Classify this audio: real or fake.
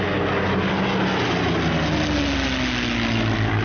real